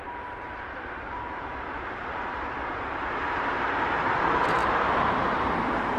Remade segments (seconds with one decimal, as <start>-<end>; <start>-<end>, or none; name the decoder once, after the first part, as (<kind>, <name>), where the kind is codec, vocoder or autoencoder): 0.0-6.0 (vocoder, BigVGAN v2)